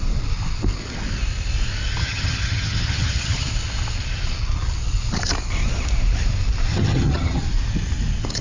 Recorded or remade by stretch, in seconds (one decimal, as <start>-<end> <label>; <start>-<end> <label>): 0.0-2.0 recorded; 2.0-3.5 remade; 3.5-6.7 recorded; 6.7-7.4 remade; 7.4-8.4 recorded